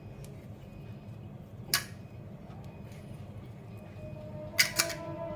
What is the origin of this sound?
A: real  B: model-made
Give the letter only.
A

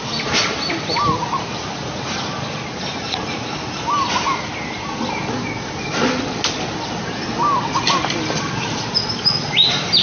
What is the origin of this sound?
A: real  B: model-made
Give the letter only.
A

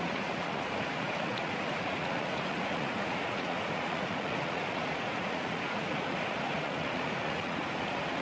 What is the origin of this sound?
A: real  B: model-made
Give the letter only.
B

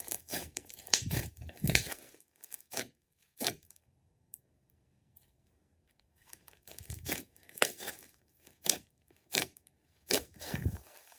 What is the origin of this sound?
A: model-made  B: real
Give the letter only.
A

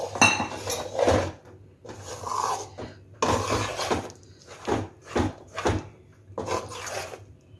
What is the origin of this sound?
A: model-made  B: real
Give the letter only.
B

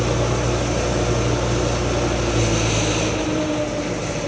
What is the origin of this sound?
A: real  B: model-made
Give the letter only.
A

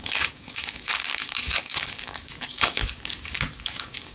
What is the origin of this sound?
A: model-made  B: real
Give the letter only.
A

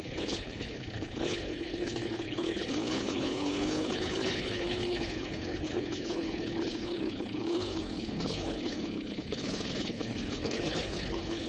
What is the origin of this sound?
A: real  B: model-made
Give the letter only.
B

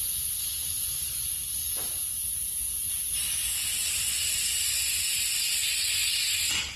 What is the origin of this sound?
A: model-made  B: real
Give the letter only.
B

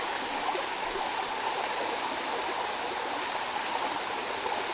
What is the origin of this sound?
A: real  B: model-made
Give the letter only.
A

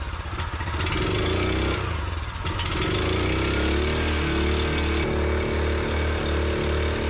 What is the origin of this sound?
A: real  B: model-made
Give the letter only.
A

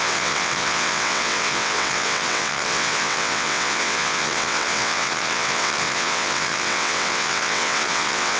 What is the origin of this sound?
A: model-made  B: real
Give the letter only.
A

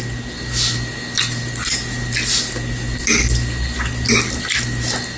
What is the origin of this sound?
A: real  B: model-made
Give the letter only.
A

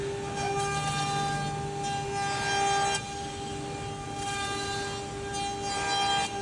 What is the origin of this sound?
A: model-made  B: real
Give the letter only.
B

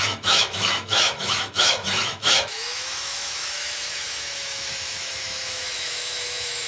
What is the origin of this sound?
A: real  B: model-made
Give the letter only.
B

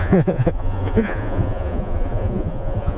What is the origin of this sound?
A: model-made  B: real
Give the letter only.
A